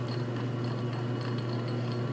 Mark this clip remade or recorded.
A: recorded